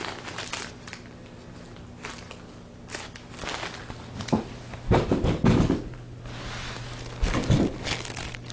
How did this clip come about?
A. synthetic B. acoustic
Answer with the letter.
B